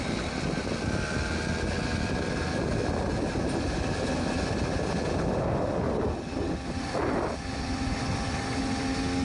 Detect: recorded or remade recorded